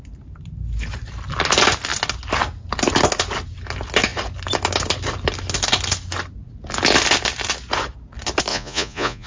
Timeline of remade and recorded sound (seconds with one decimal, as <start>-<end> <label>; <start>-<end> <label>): 0.0-8.5 recorded; 8.5-9.3 remade